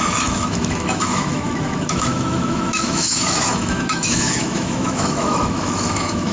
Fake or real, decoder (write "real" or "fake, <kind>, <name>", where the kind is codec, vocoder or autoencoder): fake, autoencoder, DAC-VAE